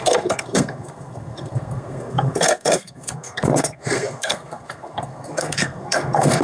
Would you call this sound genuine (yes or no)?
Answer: no